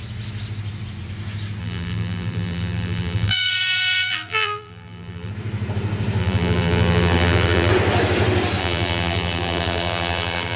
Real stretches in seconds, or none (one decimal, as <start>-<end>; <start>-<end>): 0.0-1.6; 5.3-6.2; 7.7-8.6